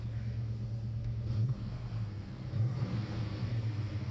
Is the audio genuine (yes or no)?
no